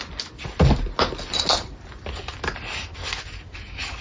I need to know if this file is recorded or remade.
recorded